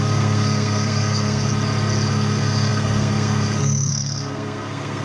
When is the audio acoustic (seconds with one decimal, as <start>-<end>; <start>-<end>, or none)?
1.5-2.1